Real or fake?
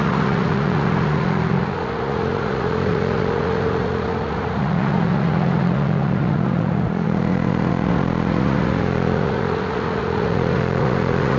fake